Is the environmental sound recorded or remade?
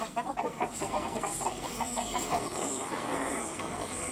remade